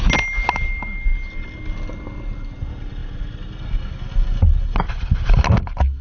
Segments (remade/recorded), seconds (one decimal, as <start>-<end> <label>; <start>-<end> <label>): 0.0-6.0 recorded